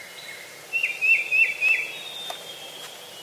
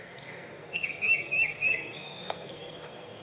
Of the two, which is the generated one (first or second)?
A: second